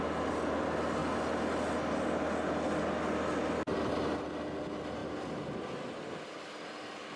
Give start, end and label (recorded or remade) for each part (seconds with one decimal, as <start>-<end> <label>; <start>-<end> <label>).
0.0-7.2 recorded